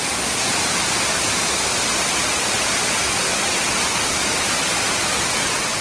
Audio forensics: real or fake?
real